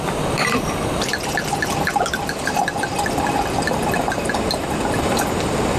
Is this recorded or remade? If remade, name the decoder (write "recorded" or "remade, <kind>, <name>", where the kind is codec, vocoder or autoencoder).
remade, vocoder, BigVGAN v2